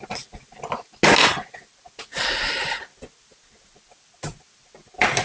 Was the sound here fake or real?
real